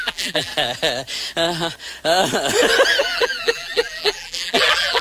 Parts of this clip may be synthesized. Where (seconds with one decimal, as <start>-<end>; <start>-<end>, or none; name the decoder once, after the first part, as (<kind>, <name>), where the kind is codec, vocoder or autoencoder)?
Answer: 0.0-0.5 (vocoder, BigVGAN v2); 3.0-5.0